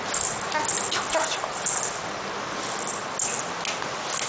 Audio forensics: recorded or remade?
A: recorded